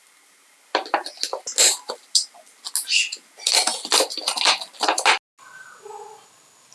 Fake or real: real